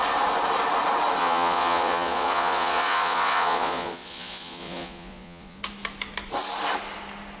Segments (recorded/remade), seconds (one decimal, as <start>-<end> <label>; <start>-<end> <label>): 0.0-1.2 recorded; 1.2-5.6 remade; 5.6-7.4 recorded

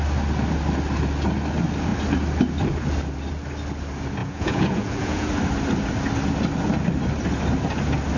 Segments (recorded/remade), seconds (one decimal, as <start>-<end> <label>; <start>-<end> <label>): 0.0-4.2 recorded; 4.2-5.3 remade; 5.3-8.2 recorded

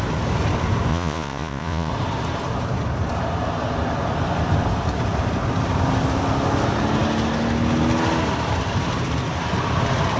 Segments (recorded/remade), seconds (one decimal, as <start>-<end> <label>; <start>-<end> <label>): 0.0-0.9 recorded; 0.9-1.9 remade; 1.9-10.2 recorded

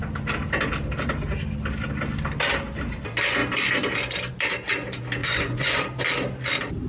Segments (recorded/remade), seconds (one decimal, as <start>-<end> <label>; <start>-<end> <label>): 0.0-5.2 recorded; 5.2-5.8 remade; 5.8-6.9 recorded

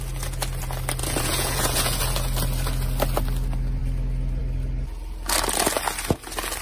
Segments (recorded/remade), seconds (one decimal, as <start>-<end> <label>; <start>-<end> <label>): 0.0-1.0 recorded; 1.0-2.0 remade; 2.0-6.6 recorded

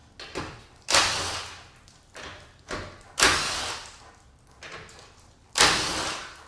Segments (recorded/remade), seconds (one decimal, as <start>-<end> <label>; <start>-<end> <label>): 0.0-6.5 recorded

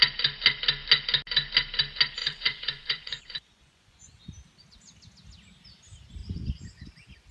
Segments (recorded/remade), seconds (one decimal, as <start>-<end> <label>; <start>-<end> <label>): 0.0-2.2 recorded; 2.2-4.2 remade; 4.2-6.2 recorded; 6.2-6.8 remade; 6.8-7.3 recorded

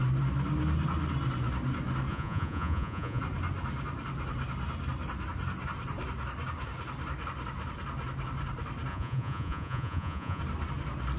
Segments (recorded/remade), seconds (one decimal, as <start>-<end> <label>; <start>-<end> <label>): 0.0-2.1 recorded; 2.1-3.2 remade; 3.2-8.9 recorded; 8.9-10.4 remade; 10.4-11.2 recorded